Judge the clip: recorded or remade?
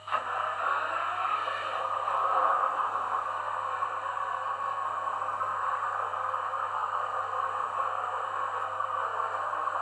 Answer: remade